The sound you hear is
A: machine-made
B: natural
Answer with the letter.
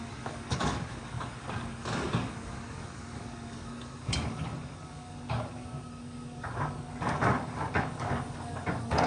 A